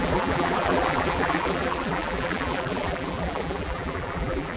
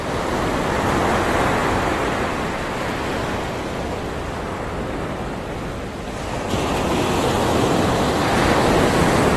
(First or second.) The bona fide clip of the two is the second